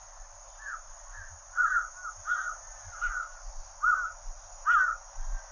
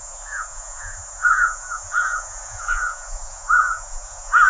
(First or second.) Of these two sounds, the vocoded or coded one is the second